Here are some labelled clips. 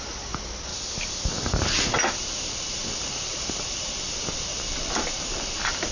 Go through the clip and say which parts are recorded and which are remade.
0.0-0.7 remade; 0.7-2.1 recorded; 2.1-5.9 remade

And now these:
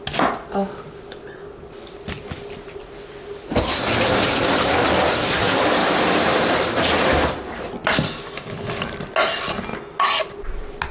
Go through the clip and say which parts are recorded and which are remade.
0.0-10.9 recorded

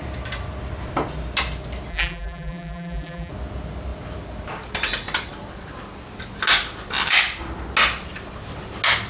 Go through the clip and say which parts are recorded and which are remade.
0.0-1.9 recorded; 1.9-3.3 remade; 3.3-9.1 recorded